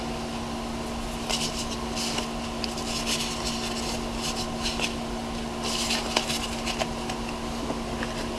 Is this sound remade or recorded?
recorded